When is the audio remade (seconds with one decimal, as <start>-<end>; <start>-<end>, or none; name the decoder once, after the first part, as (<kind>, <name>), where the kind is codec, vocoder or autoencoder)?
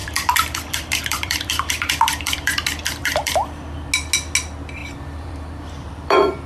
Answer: 0.0-3.9 (vocoder, BigVGAN v2); 4.8-6.5